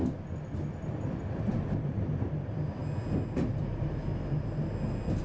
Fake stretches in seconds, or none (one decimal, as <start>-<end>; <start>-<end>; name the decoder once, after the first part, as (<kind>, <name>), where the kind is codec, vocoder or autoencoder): 1.2-2.8 (vocoder, BigVGAN v2); 3.5-4.0